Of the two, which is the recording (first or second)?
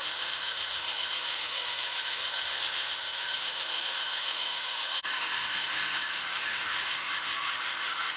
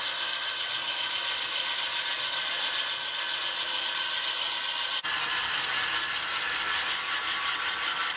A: second